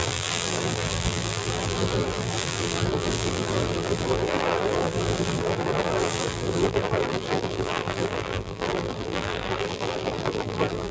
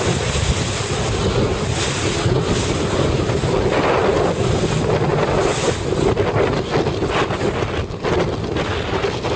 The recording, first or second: second